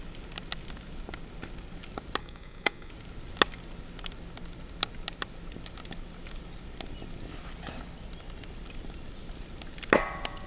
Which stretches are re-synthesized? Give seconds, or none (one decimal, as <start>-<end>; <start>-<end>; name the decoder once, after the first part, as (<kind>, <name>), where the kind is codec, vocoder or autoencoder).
2.2-2.9 (codec, DAC)